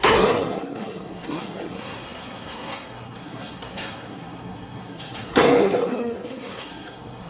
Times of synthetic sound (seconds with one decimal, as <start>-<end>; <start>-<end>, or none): 0.0-7.3